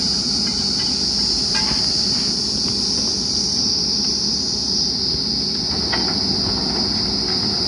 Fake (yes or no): no